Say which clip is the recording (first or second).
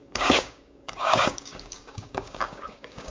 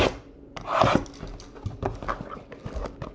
second